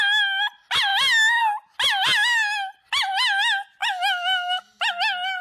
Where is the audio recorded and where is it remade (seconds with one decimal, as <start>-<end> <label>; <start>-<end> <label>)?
0.0-5.4 recorded